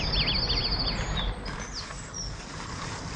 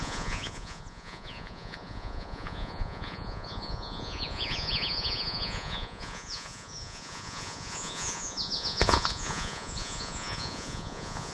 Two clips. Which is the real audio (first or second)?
first